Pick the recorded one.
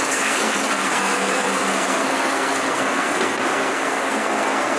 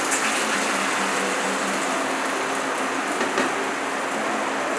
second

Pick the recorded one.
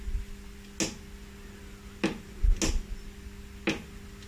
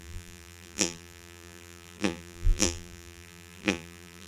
first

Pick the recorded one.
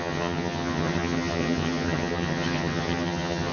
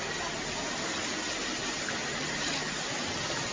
second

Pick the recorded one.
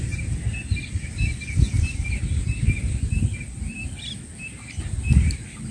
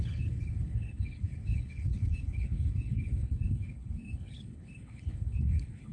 first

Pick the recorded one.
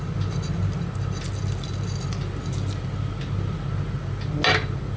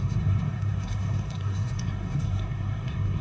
first